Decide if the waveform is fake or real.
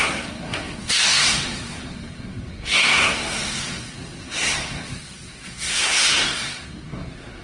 fake